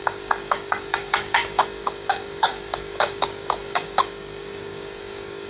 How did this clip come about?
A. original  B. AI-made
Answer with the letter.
B